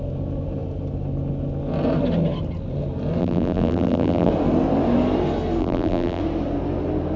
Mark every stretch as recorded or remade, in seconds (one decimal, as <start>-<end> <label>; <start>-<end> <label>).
0.0-3.2 recorded; 3.2-4.3 remade; 4.3-5.6 recorded; 5.6-6.2 remade; 6.2-7.2 recorded